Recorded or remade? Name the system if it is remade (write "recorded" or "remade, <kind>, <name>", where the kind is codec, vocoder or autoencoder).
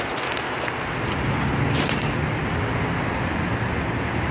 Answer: recorded